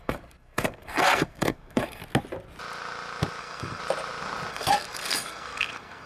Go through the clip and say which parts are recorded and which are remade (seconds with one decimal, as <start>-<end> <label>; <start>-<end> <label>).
0.0-2.0 remade; 2.0-3.4 recorded; 3.4-3.8 remade; 3.8-4.5 recorded; 4.5-6.1 remade